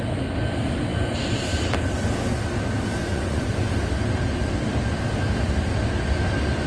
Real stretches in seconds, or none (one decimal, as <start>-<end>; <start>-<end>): 0.0-3.0; 3.7-6.7